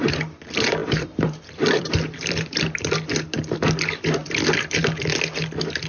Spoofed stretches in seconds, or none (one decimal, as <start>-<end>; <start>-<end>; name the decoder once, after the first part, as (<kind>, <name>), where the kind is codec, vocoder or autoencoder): 0.8-2.9 (vocoder, BigVGAN v2); 4.2-4.8